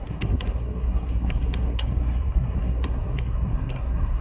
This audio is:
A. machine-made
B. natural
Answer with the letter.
A